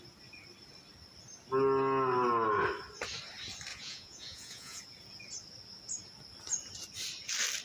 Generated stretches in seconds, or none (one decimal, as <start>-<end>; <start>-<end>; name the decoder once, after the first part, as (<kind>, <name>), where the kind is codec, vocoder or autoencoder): 3.7-4.8 (vocoder, Vocos)